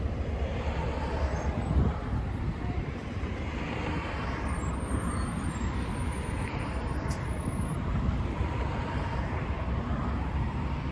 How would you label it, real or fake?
fake